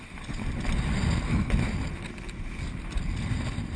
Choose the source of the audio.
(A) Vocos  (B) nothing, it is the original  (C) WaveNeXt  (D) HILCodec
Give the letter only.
B